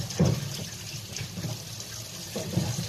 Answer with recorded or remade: remade